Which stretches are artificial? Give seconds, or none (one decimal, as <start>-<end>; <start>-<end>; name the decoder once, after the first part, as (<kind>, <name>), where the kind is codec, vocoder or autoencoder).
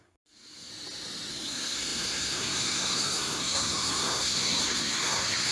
0.0-0.7 (codec, SNAC); 1.3-5.5